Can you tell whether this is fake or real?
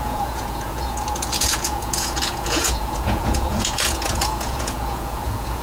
fake